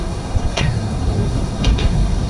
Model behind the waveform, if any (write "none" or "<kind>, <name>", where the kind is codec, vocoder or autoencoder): codec, SNAC